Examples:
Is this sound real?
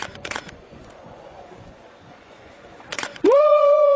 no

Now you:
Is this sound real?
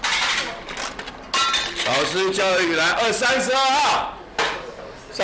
yes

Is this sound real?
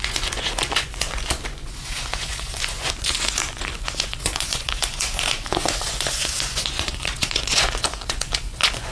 no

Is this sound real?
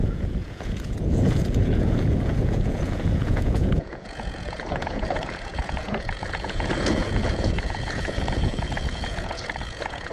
no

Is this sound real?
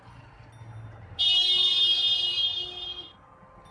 yes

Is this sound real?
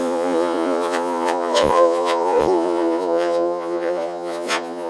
no